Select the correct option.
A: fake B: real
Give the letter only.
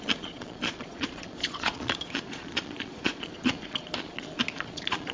A